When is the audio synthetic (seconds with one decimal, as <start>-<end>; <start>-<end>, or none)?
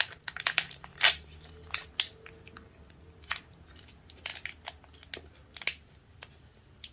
0.0-0.9; 3.8-4.3; 6.1-6.9